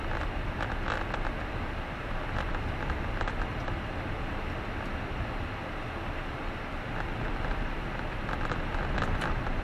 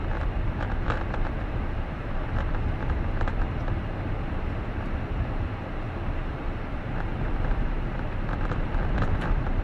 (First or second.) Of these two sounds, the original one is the first